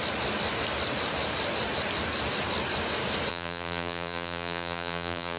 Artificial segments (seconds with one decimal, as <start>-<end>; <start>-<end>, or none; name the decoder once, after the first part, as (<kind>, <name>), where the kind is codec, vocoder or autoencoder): 3.3-5.4 (vocoder, BigVGAN v2)